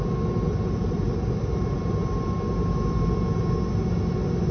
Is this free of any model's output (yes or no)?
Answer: yes